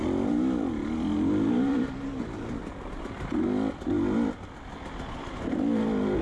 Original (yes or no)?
yes